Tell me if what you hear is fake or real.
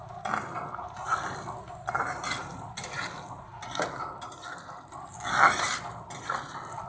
real